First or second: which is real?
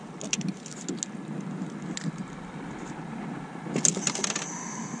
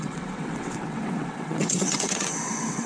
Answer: first